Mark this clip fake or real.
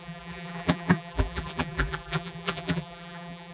fake